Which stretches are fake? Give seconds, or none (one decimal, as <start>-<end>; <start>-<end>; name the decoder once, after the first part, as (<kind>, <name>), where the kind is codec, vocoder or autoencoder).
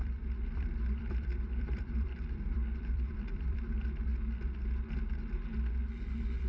0.0-4.1 (vocoder, BigVGAN v2)